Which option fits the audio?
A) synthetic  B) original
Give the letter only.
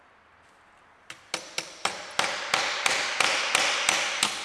B